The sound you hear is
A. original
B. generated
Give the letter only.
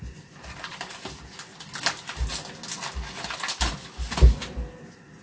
A